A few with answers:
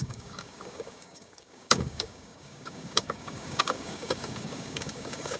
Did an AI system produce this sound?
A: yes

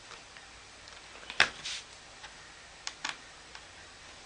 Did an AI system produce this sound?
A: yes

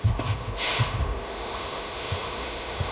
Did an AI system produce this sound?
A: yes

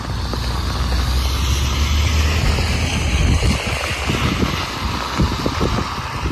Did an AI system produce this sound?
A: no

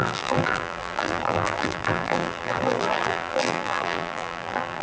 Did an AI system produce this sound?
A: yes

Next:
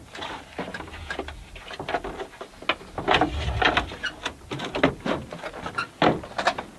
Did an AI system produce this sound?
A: no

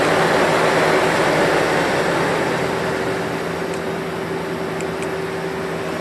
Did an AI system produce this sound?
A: no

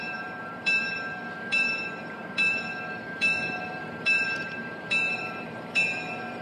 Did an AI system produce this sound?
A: yes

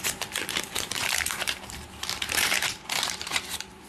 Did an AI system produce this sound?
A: yes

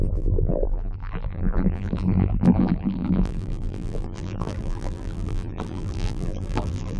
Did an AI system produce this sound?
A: yes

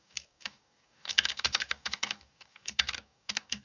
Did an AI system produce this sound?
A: yes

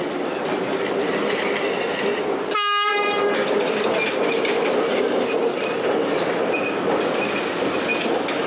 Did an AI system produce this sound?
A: no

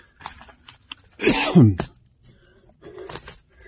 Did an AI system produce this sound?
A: no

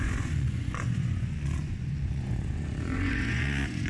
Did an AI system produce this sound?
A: yes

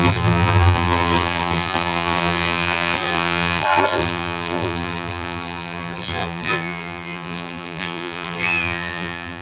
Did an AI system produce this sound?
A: yes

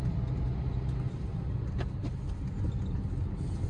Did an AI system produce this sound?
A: no